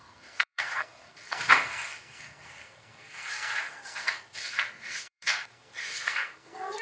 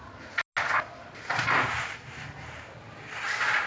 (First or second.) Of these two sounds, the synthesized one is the first